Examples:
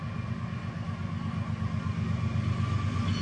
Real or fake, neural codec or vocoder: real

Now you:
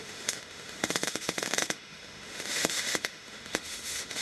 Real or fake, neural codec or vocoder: fake, autoencoder, DAC-VAE